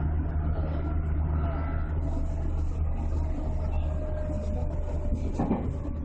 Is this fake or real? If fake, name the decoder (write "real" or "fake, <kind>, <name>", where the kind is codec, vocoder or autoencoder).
real